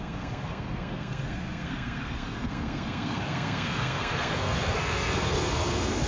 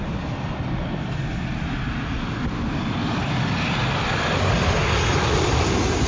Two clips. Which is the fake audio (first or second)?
first